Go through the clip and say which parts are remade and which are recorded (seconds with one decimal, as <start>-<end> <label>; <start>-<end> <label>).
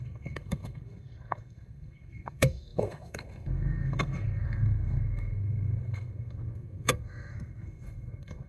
0.0-8.5 remade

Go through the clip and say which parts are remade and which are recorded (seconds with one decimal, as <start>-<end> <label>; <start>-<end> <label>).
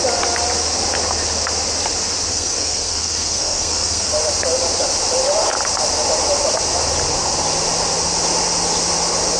0.0-2.3 recorded; 2.3-4.1 remade; 4.1-9.4 recorded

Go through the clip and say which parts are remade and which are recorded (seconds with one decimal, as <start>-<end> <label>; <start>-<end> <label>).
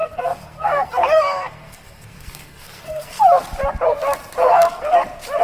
0.0-3.2 remade; 3.2-4.4 recorded; 4.4-4.9 remade; 4.9-5.4 recorded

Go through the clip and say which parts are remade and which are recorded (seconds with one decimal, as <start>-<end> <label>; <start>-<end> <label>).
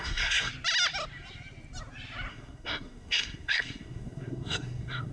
0.0-0.5 remade; 0.5-2.3 recorded; 2.3-5.1 remade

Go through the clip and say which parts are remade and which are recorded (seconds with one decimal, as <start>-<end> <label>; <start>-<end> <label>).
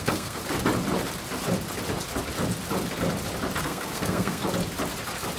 0.0-0.4 remade; 0.4-3.6 recorded; 3.6-4.4 remade; 4.4-5.4 recorded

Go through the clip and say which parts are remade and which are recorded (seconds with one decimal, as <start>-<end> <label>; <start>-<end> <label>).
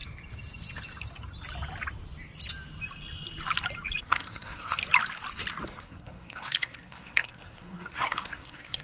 0.0-4.0 recorded; 4.0-4.8 remade; 4.8-5.7 recorded; 5.7-8.8 remade